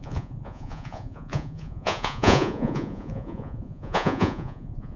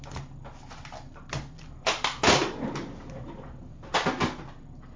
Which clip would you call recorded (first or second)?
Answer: second